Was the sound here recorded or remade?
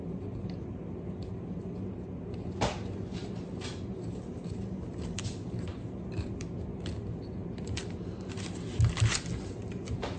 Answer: recorded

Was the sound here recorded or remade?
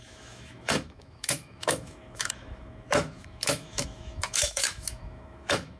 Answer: remade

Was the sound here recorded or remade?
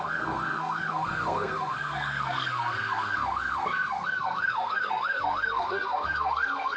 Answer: remade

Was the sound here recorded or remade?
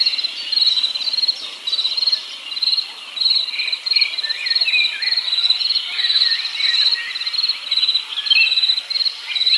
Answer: recorded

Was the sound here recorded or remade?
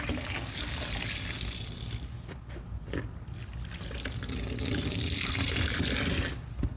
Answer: recorded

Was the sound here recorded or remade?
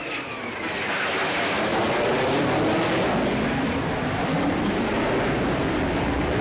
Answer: recorded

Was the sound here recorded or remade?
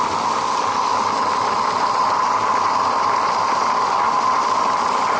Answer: recorded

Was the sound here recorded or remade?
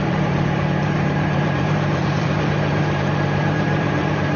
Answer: remade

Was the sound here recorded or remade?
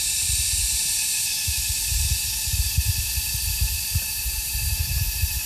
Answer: recorded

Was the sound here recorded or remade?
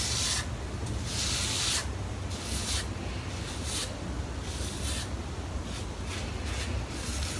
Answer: recorded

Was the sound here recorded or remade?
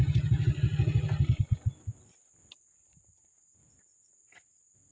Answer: recorded